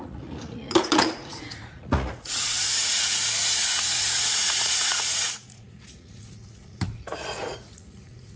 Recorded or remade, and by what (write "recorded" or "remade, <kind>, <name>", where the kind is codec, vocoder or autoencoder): remade, vocoder, Vocos